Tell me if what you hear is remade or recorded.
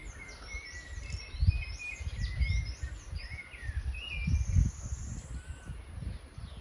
recorded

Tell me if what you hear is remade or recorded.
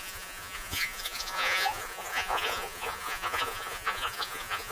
remade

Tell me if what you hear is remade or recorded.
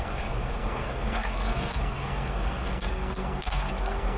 remade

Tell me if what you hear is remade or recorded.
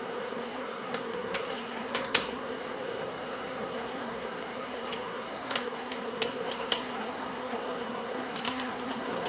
remade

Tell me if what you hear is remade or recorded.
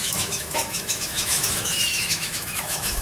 remade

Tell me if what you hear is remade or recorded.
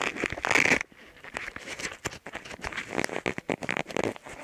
recorded